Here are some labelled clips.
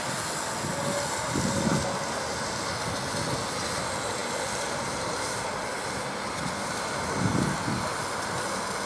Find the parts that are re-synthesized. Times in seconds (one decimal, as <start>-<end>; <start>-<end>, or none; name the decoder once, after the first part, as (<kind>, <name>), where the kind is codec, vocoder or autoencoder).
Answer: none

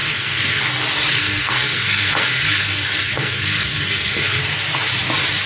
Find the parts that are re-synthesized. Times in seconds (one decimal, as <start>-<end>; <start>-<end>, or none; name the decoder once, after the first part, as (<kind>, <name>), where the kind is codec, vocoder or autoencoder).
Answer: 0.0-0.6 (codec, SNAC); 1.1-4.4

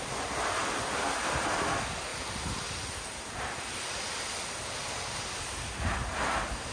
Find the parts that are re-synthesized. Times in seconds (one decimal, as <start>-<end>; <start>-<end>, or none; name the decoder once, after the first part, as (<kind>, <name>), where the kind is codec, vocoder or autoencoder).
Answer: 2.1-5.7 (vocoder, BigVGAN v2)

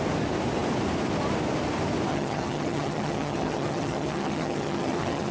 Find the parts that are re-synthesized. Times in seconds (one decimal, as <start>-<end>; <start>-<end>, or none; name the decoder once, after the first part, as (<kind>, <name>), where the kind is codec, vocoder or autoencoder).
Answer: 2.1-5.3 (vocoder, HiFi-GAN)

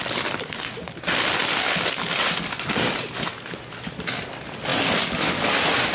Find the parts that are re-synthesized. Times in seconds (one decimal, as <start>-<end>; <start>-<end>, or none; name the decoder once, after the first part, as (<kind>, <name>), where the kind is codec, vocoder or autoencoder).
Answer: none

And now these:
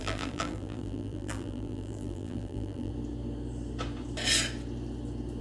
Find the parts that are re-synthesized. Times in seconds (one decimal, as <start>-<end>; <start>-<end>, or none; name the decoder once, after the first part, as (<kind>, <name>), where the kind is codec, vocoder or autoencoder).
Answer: 0.0-2.9 (vocoder, BigVGAN v2)

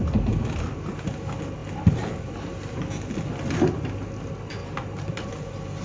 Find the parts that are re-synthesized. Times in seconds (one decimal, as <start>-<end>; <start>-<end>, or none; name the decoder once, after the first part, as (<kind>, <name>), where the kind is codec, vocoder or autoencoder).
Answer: 4.6-5.3 (vocoder, BigVGAN v2)

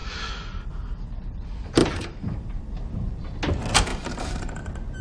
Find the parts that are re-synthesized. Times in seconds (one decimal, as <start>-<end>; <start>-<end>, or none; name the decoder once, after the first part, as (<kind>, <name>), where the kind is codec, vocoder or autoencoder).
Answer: 1.8-2.7 (vocoder, BigVGAN v2); 3.9-4.6